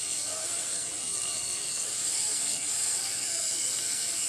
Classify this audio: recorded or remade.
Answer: remade